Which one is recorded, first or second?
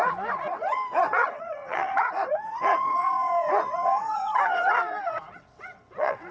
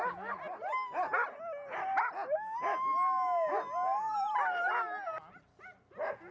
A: second